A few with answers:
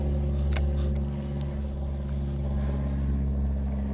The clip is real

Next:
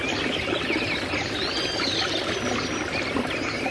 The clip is real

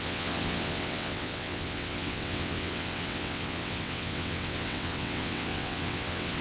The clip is fake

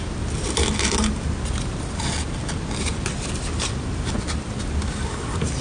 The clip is real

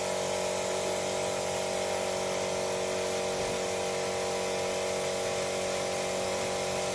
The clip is real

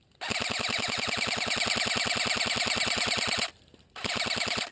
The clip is real